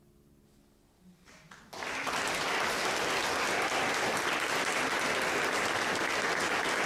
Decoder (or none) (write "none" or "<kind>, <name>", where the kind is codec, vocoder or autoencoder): none